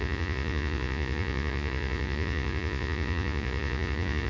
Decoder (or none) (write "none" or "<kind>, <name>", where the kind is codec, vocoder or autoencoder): vocoder, Vocos